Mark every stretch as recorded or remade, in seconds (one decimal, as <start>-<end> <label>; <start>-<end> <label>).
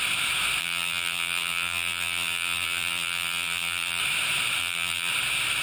0.0-0.6 recorded; 0.6-4.0 remade; 4.0-4.6 recorded; 4.6-5.1 remade; 5.1-5.6 recorded